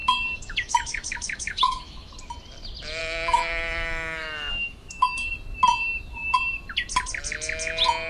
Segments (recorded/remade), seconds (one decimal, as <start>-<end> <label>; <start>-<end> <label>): 0.0-2.1 remade; 2.1-3.0 recorded; 3.0-5.3 remade; 5.3-8.1 recorded